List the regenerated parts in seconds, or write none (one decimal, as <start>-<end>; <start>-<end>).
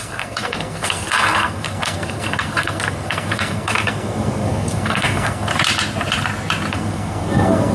0.0-5.5; 6.7-7.7